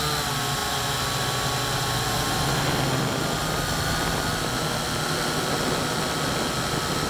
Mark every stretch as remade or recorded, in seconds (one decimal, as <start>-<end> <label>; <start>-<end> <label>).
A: 0.0-7.1 recorded